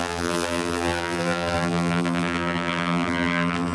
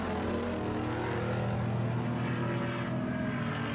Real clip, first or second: second